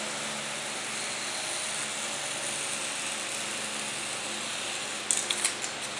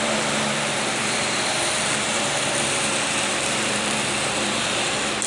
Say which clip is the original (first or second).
first